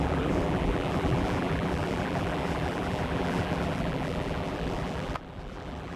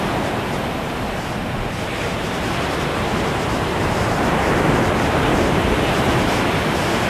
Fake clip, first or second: first